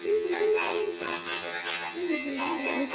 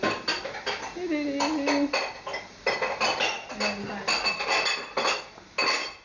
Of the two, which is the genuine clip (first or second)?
second